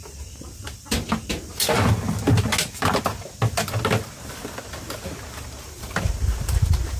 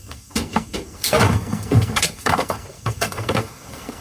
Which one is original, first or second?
first